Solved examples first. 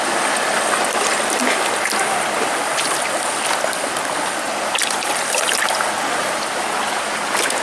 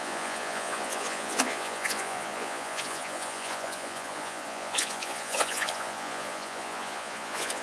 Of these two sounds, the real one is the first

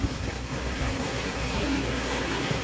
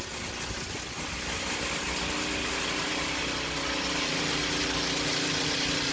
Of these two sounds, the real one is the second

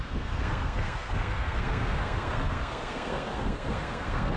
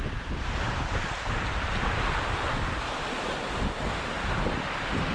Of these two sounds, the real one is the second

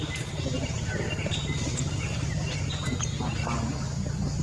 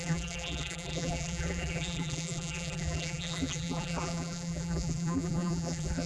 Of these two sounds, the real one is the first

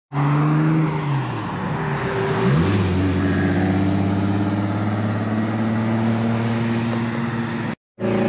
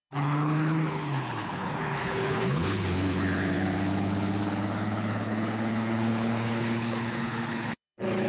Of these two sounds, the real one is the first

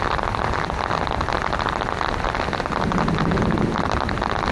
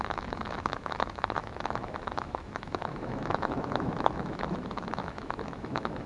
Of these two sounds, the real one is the first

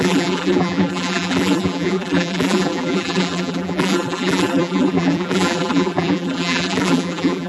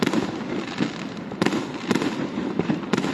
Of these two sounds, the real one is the second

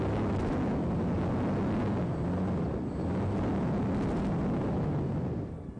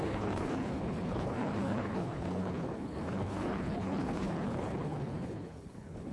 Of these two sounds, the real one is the first